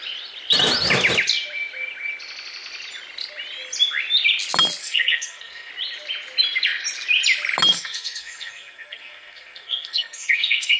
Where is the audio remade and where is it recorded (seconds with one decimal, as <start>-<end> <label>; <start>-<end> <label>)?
0.0-4.8 recorded; 4.8-5.7 remade; 5.7-7.7 recorded; 7.7-10.8 remade